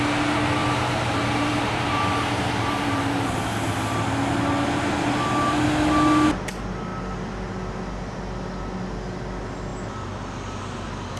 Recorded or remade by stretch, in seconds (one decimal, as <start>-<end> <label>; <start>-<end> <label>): 0.0-0.6 recorded; 0.6-3.5 remade; 3.5-11.2 recorded